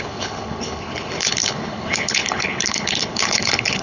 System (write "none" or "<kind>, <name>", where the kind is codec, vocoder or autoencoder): codec, HILCodec